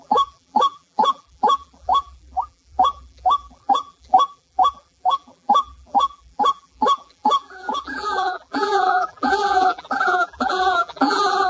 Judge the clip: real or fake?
fake